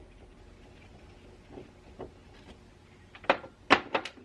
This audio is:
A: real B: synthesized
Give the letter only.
A